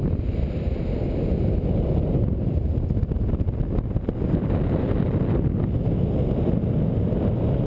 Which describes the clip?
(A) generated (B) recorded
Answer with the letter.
B